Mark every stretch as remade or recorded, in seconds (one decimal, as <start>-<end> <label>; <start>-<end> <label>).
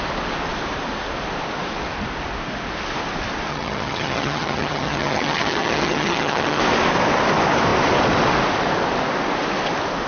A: 0.0-3.5 recorded; 3.5-6.6 remade; 6.6-10.1 recorded